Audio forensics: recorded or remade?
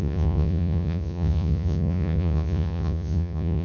remade